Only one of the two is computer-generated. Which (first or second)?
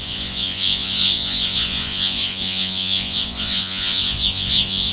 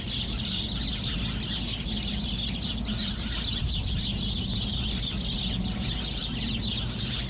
first